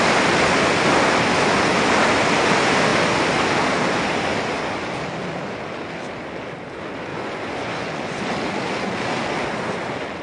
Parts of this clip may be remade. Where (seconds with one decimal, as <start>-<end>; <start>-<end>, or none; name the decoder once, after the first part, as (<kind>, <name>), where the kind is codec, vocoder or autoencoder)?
7.1-8.2 (vocoder, Vocos)